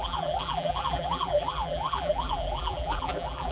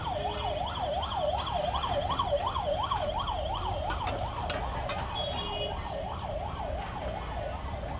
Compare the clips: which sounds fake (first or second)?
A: first